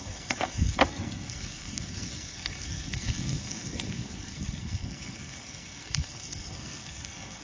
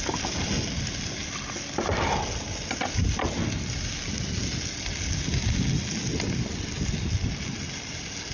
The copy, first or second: first